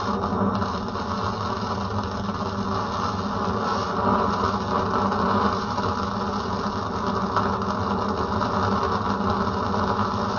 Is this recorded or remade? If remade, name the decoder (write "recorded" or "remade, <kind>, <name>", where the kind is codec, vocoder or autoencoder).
recorded